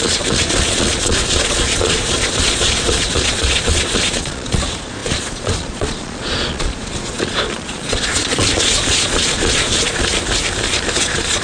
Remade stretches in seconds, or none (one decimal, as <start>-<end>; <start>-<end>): 0.0-10.1; 11.0-11.4